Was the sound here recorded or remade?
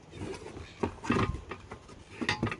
recorded